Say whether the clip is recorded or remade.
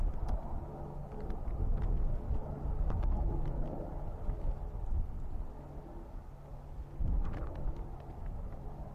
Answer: recorded